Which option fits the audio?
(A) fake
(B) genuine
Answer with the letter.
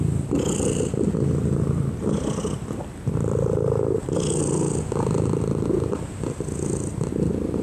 B